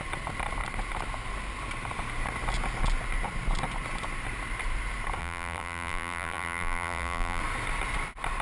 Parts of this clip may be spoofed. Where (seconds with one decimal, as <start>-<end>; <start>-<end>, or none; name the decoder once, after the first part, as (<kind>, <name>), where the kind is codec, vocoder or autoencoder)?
5.2-7.4 (vocoder, BigVGAN v2)